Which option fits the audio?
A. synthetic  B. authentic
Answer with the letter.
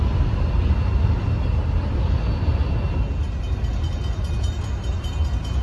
B